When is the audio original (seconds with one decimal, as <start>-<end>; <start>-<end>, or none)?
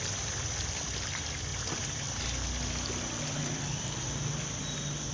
0.0-5.1